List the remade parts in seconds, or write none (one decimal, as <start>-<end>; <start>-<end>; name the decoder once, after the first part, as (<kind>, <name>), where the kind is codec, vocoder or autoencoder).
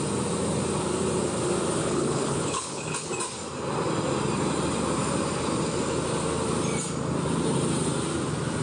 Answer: 1.8-3.1 (codec, HILCodec)